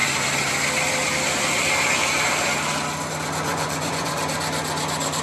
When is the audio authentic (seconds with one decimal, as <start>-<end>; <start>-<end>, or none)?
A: 0.0-3.5; 4.2-5.2